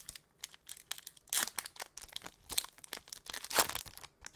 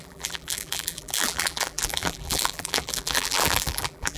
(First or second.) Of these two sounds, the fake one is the second